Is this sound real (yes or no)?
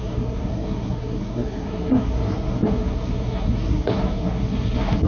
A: no